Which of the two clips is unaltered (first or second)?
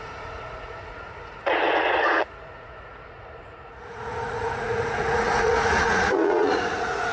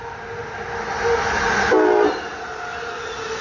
second